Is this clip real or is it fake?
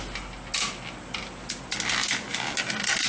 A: real